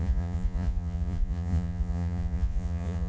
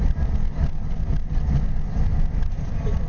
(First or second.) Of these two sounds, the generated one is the first